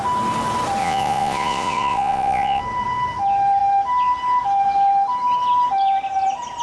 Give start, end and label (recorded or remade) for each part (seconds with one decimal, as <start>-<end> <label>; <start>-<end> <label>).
0.0-0.8 recorded; 0.8-2.6 remade; 2.6-6.6 recorded